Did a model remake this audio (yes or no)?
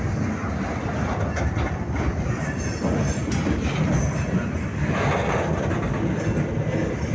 no